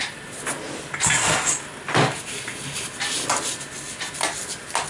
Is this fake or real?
real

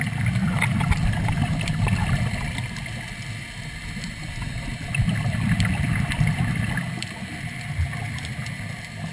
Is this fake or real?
real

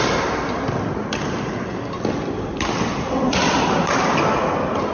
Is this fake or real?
fake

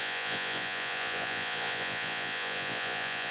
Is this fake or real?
fake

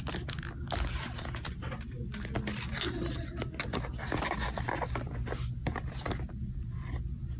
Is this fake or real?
real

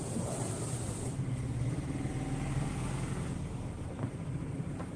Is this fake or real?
fake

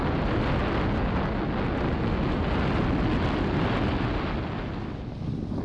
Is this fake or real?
real